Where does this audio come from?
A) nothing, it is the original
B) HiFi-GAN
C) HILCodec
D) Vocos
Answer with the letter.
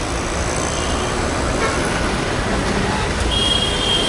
A